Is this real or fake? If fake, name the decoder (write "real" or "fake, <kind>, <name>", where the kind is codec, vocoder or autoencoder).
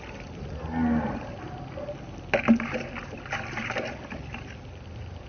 real